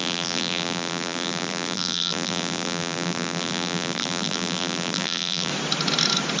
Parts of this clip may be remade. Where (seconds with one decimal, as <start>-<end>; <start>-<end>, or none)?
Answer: 0.0-5.5